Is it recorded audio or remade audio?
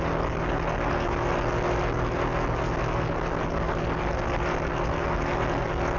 recorded